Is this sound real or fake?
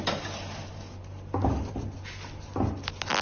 real